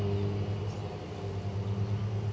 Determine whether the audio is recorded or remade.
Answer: recorded